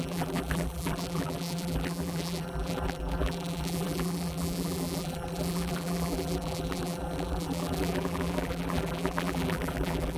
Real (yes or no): no